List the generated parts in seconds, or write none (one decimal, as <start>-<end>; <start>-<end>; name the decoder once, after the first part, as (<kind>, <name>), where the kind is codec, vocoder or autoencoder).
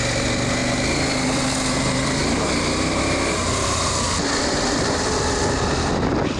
none